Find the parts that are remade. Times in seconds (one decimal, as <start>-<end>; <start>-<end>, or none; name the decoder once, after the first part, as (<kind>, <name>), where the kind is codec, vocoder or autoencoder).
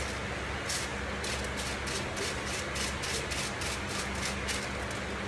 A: none